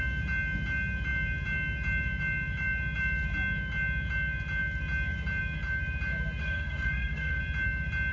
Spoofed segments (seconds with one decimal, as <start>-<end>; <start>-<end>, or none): 6.4-7.4